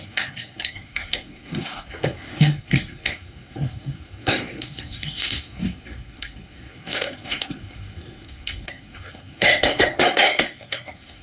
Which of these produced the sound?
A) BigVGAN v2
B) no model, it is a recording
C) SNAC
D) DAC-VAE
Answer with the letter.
C